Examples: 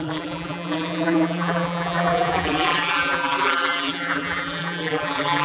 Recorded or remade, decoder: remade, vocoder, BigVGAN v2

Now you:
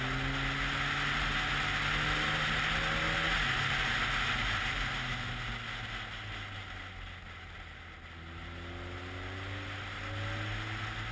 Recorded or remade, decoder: recorded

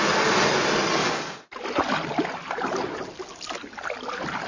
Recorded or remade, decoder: recorded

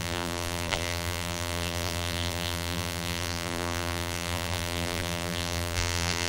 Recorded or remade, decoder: remade, vocoder, BigVGAN v2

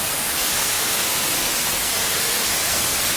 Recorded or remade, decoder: remade, codec, SNAC